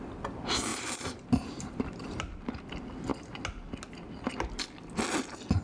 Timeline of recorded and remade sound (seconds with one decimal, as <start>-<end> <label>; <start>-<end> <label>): 0.0-0.7 recorded; 0.7-1.8 remade; 1.8-5.6 recorded